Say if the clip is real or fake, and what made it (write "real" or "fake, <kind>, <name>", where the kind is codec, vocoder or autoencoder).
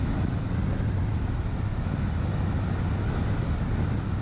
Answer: real